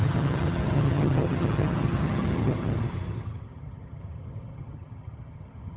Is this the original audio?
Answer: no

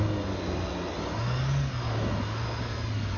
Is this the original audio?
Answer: yes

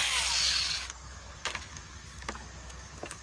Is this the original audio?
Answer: no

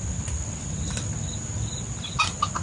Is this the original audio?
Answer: yes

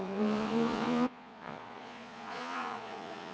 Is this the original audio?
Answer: no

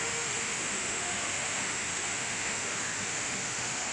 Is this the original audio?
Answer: no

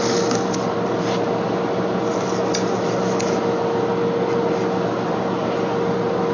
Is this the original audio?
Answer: yes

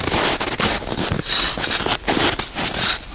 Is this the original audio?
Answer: yes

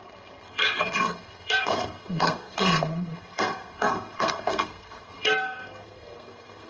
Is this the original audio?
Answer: no